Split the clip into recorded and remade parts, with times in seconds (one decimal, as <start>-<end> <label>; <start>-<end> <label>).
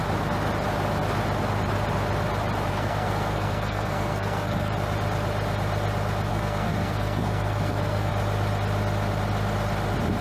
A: 0.0-2.7 recorded; 2.7-4.7 remade; 4.7-6.3 recorded; 6.3-8.1 remade; 8.1-10.2 recorded